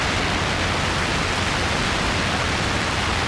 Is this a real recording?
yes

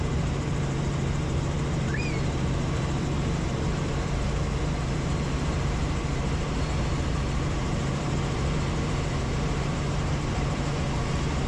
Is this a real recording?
no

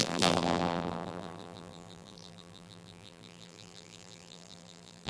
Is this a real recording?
no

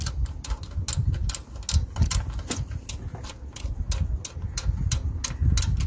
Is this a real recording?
yes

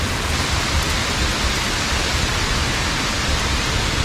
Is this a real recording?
no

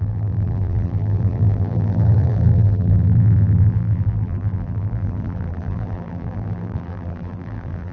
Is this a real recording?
no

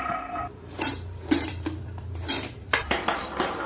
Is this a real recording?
no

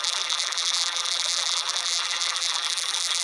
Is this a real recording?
no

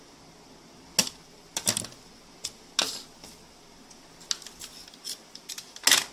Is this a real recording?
yes